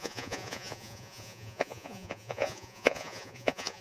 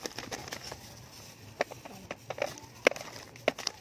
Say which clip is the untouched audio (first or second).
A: second